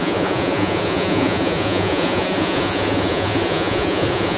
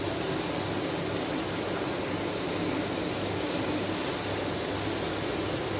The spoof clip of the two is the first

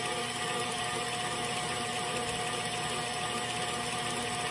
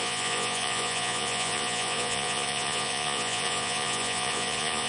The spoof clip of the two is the second